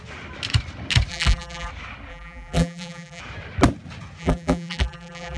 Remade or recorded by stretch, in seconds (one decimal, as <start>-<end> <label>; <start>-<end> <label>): 0.0-1.1 recorded; 1.1-1.7 remade; 1.7-2.1 recorded; 2.1-3.2 remade; 3.2-4.2 recorded; 4.2-5.4 remade